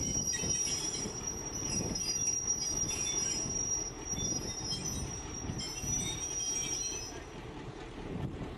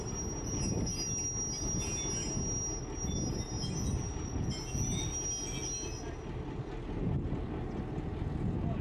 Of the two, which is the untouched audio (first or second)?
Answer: second